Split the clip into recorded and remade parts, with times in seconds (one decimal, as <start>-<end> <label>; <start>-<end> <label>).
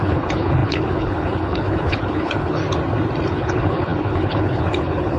0.0-2.6 remade; 2.6-3.3 recorded; 3.3-5.2 remade